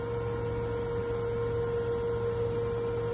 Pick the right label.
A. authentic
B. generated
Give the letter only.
A